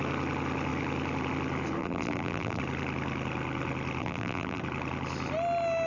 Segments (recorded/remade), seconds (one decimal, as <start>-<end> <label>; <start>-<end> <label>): 0.0-1.8 recorded; 1.8-2.6 remade; 2.6-4.0 recorded; 4.0-4.6 remade; 4.6-5.9 recorded